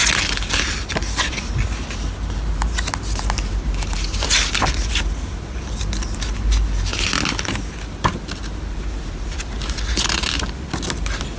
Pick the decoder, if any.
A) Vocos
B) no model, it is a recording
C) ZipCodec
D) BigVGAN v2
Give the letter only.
B